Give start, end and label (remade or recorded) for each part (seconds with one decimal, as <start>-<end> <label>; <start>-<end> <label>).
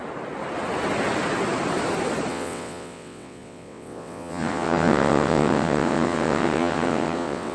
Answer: 0.0-2.3 recorded; 2.3-7.5 remade